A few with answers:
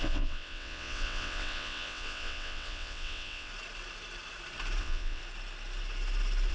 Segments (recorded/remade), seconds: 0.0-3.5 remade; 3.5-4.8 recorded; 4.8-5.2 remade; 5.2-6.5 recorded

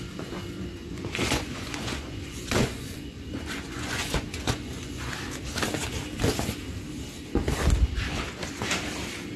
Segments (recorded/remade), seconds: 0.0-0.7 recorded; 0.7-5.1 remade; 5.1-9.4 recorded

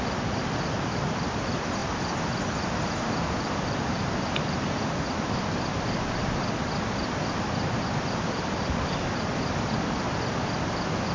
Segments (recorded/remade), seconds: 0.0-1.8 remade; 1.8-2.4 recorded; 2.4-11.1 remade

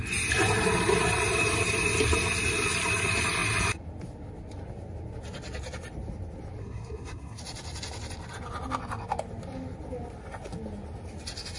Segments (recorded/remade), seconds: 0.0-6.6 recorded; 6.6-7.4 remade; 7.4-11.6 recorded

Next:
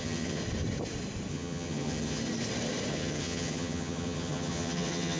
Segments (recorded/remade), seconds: 0.0-0.4 remade; 0.4-1.3 recorded; 1.3-2.2 remade; 2.2-2.9 recorded; 2.9-5.2 remade